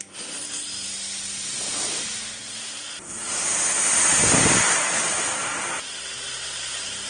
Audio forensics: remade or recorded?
recorded